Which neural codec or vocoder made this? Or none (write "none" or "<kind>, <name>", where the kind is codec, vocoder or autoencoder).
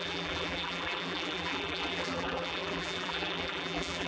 vocoder, BigVGAN v2